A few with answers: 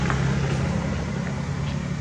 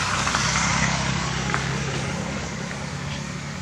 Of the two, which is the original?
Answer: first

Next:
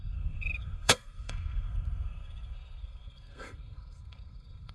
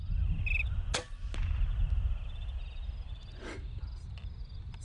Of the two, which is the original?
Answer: second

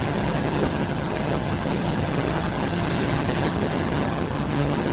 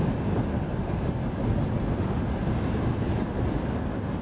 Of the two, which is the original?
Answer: second